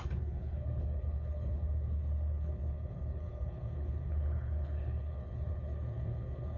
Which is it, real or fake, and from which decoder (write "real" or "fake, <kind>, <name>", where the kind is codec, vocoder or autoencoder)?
fake, codec, HILCodec